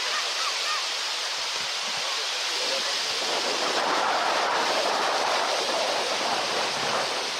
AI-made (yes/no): no